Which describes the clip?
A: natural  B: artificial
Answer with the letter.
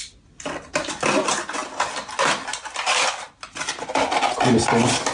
A